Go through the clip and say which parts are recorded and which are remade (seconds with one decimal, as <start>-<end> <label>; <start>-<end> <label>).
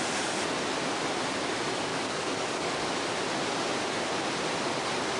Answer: 0.0-1.9 recorded; 1.9-2.9 remade; 2.9-5.2 recorded